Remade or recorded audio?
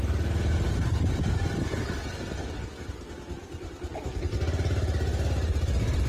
recorded